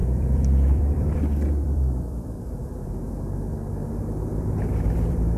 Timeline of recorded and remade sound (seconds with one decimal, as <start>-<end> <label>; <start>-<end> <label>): 0.0-3.0 remade; 3.0-3.8 recorded; 3.8-5.4 remade